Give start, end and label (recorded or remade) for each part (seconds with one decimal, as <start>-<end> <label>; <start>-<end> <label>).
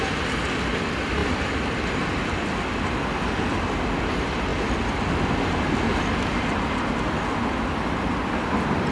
0.0-8.9 recorded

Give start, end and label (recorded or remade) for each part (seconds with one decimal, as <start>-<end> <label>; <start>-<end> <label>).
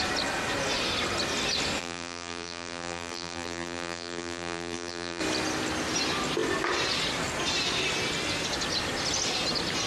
0.0-1.8 recorded; 1.8-5.2 remade; 5.2-9.9 recorded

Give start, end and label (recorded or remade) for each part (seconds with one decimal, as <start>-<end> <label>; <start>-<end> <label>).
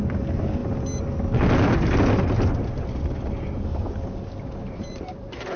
0.0-4.6 recorded; 4.6-5.6 remade